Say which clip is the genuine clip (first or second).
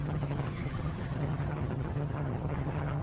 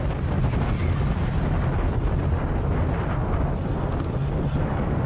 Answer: second